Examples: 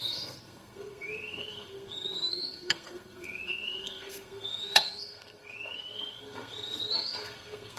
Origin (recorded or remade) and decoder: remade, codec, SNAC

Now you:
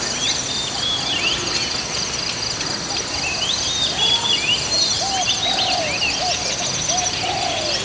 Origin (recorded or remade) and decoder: recorded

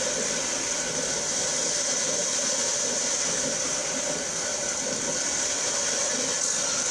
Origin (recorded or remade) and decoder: recorded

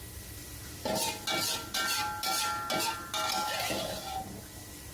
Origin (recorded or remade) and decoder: recorded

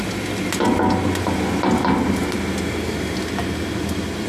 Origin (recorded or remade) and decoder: recorded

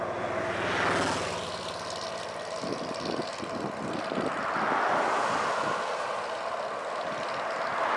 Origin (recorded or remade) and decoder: recorded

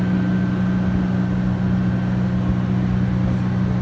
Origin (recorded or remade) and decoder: recorded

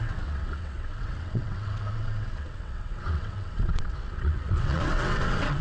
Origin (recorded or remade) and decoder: remade, vocoder, WaveNeXt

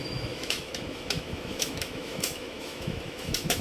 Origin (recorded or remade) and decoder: remade, autoencoder, DAC-VAE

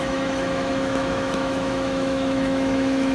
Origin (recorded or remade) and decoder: remade, autoencoder, DAC-VAE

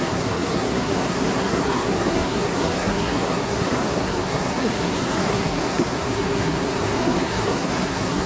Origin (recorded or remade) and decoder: remade, codec, SNAC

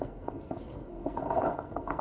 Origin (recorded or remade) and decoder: remade, codec, SNAC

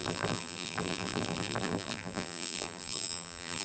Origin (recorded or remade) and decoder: remade, vocoder, BigVGAN v2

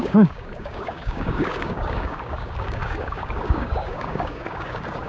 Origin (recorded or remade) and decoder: remade, codec, DAC